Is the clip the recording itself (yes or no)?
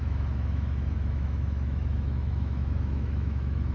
no